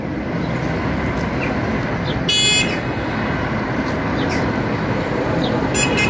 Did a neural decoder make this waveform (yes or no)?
no